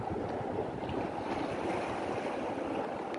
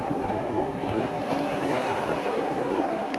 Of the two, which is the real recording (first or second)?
first